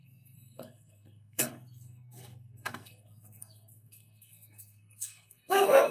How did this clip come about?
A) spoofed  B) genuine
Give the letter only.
A